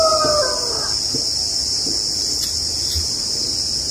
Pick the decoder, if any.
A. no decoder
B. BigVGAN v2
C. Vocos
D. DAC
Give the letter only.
A